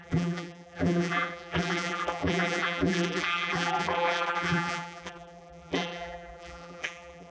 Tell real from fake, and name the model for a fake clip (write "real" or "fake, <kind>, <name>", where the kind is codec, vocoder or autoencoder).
fake, vocoder, BigVGAN v2